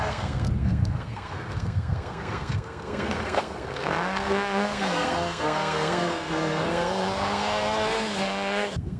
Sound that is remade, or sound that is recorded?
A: remade